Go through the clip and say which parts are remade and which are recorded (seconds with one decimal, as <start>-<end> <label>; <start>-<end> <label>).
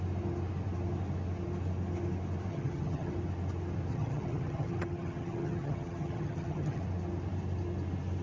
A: 0.0-2.5 recorded; 2.5-3.1 remade; 3.1-3.9 recorded; 3.9-6.8 remade; 6.8-8.2 recorded